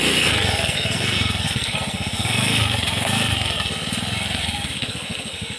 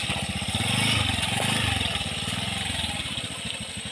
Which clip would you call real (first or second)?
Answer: second